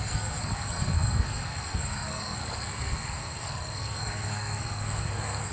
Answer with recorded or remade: remade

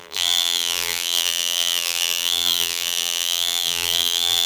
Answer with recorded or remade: remade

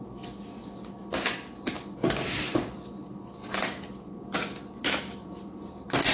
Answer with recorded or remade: recorded